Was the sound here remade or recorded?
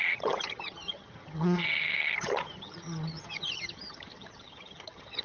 remade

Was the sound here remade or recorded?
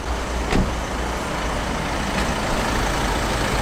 recorded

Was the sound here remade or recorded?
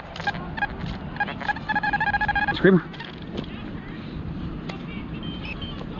remade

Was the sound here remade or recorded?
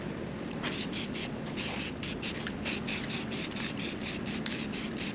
recorded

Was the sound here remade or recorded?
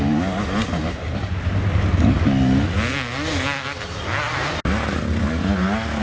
recorded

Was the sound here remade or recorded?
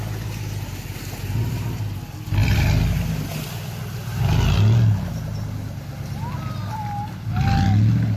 recorded